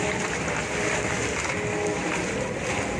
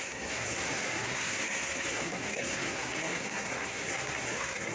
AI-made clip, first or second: second